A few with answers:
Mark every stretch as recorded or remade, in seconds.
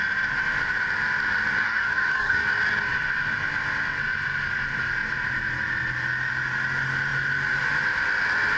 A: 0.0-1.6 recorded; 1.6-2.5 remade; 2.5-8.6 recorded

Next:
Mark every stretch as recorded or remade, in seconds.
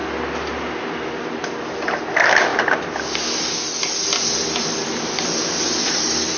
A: 0.0-6.4 recorded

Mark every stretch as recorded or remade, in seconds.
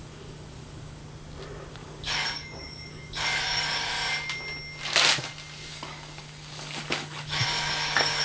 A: 0.0-1.0 remade; 1.0-1.7 recorded; 1.7-3.9 remade; 3.9-5.7 recorded; 5.7-8.2 remade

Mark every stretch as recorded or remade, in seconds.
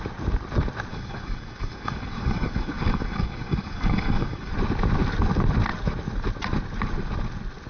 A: 0.0-0.9 recorded; 0.9-4.5 remade; 4.5-7.7 recorded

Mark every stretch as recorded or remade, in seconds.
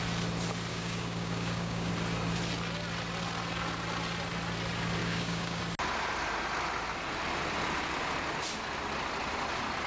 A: 0.0-0.7 recorded; 0.7-1.9 remade; 1.9-5.0 recorded; 5.0-5.6 remade; 5.6-9.9 recorded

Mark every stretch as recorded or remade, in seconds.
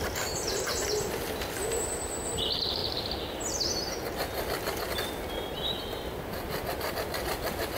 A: 0.0-7.8 recorded